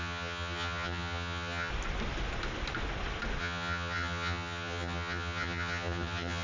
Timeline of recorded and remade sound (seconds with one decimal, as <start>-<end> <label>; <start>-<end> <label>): 0.0-1.7 remade; 1.7-3.4 recorded; 3.4-6.4 remade